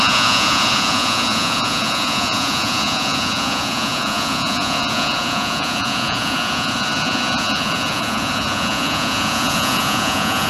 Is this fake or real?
fake